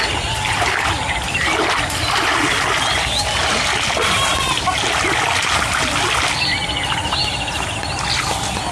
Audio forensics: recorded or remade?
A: recorded